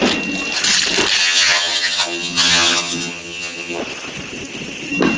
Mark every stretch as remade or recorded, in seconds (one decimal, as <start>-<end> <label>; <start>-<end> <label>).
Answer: 0.0-1.2 recorded; 1.2-3.8 remade; 3.8-5.2 recorded